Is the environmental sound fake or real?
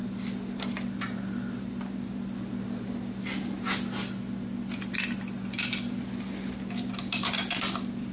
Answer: real